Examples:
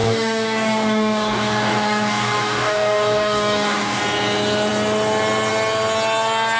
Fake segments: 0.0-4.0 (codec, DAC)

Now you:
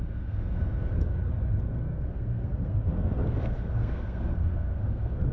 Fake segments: 0.0-1.1 (codec, SNAC); 1.7-5.3

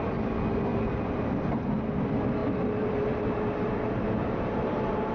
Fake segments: 0.7-1.8 (vocoder, BigVGAN v2); 2.4-5.1

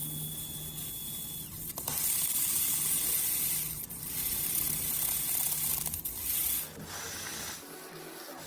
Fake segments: none

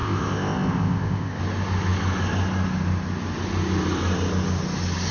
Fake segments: 0.0-1.4 (codec, ZipCodec)

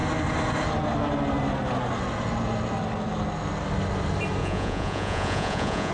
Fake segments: 4.4-5.9 (vocoder, Vocos)

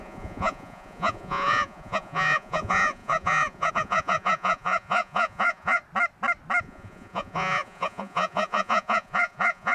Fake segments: 0.0-5.8 (vocoder, Vocos); 6.6-9.7

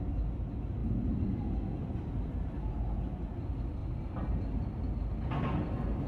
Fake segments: none